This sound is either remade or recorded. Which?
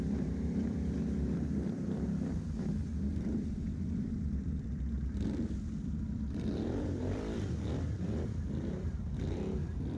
remade